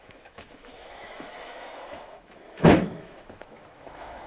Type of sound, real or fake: fake